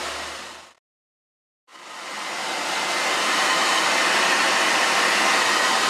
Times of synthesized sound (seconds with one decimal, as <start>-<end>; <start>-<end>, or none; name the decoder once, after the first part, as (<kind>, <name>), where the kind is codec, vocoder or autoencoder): none

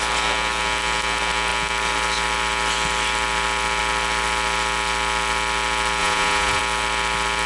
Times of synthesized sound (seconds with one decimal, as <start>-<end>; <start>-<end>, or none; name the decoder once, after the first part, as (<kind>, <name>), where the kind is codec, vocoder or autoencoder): 6.0-6.6 (vocoder, Vocos)

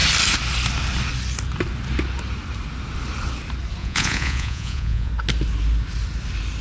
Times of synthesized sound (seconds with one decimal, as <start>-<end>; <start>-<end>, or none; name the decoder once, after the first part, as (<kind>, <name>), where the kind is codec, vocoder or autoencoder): 3.8-5.1 (vocoder, Vocos)

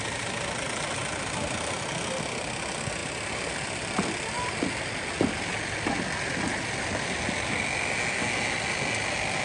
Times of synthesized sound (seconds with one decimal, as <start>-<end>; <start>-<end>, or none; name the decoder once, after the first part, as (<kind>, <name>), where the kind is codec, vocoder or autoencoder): none

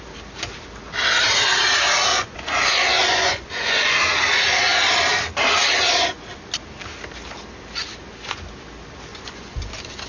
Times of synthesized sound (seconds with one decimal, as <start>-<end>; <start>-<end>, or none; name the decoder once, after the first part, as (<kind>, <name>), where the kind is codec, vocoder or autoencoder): 2.1-4.0 (vocoder, Vocos); 9.1-9.7

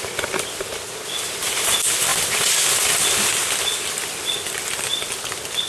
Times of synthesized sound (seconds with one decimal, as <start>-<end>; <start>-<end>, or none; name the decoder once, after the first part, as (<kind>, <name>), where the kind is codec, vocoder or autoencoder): none

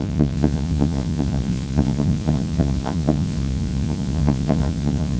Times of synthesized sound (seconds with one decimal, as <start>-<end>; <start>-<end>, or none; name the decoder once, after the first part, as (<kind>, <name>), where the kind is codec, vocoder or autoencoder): 0.0-5.2 (vocoder, Vocos)

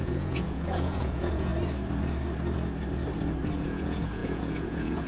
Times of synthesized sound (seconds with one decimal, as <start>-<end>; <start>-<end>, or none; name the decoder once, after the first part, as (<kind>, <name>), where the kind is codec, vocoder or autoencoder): 0.0-1.5 (vocoder, Vocos); 3.5-5.1